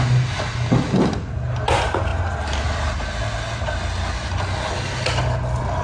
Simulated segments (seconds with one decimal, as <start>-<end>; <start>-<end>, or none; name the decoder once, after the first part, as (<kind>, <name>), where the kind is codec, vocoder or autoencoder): none